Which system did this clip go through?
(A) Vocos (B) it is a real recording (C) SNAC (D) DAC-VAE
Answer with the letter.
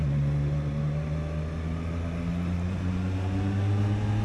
B